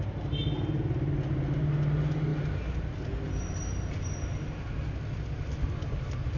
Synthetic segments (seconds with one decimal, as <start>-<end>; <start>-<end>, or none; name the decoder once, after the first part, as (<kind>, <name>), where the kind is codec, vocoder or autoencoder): none